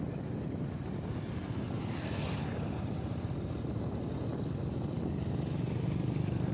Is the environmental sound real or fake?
real